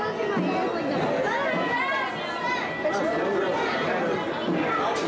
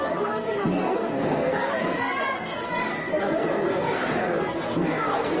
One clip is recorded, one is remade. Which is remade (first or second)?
second